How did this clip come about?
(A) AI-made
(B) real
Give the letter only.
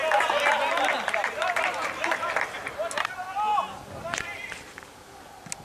B